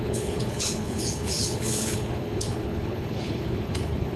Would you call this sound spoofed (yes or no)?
yes